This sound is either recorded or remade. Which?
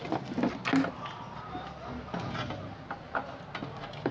recorded